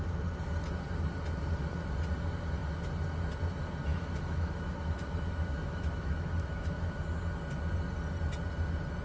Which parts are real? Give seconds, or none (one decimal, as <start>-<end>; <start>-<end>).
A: 0.0-3.9; 7.0-9.0

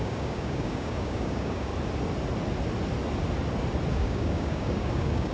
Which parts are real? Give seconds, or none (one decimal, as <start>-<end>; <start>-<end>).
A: 1.7-3.9

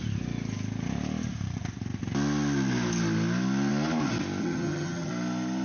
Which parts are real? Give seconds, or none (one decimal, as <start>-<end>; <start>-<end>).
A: 0.0-4.4; 5.1-5.6

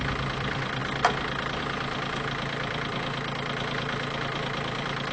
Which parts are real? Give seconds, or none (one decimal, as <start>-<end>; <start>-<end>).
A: 0.8-1.6

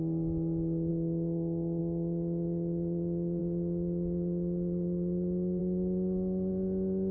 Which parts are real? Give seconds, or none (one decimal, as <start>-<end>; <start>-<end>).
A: 0.0-7.1

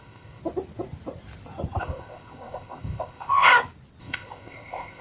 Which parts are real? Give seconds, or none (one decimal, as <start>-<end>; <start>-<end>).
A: 0.4-1.8; 3.5-4.0

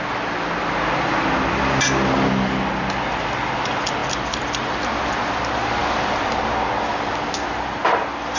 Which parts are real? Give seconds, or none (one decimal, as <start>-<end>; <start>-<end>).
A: 0.0-8.4

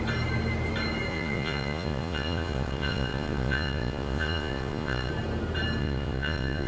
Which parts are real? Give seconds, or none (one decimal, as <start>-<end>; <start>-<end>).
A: 0.0-1.1; 5.1-5.8